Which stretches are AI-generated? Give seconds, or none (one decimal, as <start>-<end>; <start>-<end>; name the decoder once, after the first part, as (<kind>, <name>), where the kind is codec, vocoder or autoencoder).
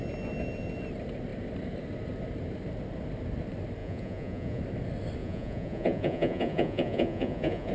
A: 3.8-4.6 (vocoder, Vocos); 5.2-7.7